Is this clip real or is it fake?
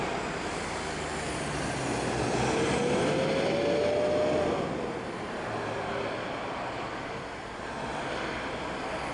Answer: real